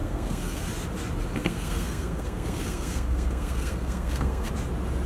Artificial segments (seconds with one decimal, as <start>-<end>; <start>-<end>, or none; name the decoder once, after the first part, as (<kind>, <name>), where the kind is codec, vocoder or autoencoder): 0.0-0.6 (codec, SNAC); 1.4-4.5